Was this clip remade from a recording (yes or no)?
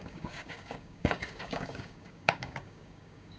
yes